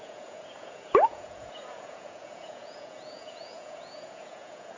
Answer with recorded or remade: remade